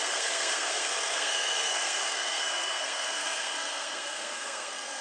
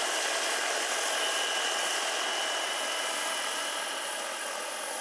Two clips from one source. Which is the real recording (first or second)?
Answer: second